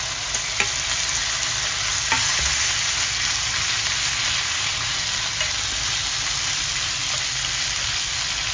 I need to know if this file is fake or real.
real